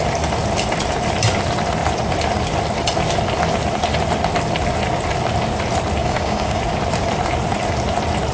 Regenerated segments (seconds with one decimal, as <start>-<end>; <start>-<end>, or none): 6.0-6.6